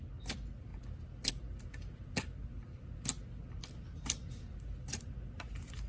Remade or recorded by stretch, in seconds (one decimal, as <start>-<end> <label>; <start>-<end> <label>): 0.0-5.9 recorded